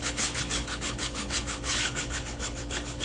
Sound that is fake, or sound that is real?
fake